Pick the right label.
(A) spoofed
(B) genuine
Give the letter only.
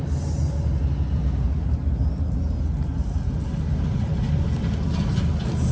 B